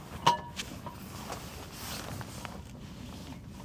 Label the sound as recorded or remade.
recorded